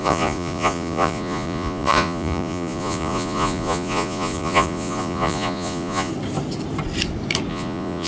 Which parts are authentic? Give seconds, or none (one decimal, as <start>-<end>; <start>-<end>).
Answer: 6.1-7.5